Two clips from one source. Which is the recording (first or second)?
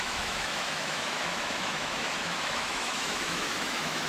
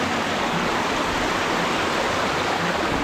second